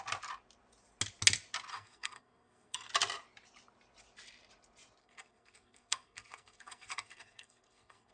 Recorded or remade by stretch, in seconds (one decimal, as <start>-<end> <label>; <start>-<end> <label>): 0.0-1.7 recorded; 1.7-2.9 remade; 2.9-5.0 recorded; 5.0-8.1 remade